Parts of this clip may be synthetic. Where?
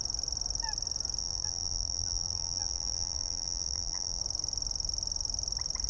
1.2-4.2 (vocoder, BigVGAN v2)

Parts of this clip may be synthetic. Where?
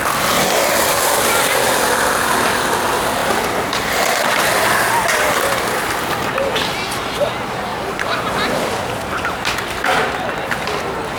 7.7-8.3 (vocoder, BigVGAN v2)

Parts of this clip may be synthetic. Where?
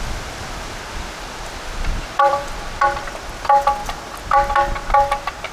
2.0-2.6 (vocoder, BigVGAN v2); 3.8-4.5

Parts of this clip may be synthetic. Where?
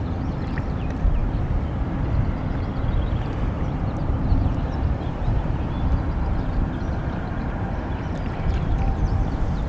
0.0-1.2 (vocoder, BigVGAN v2); 3.2-9.7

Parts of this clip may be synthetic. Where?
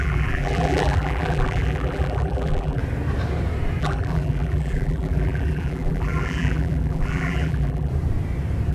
0.0-2.8 (vocoder, BigVGAN v2); 3.8-7.9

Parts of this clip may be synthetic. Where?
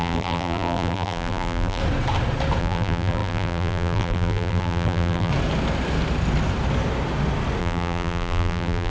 0.0-1.8 (vocoder, BigVGAN v2); 2.6-5.3; 7.6-8.9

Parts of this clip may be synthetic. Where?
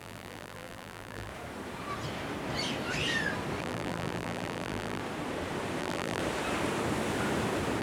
0.0-1.3 (vocoder, BigVGAN v2); 3.6-5.0; 5.8-6.2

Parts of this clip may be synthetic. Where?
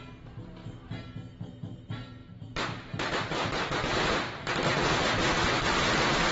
2.2-3.9 (vocoder, BigVGAN v2)